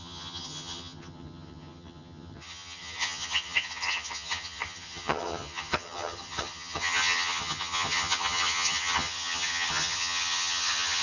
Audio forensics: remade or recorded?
remade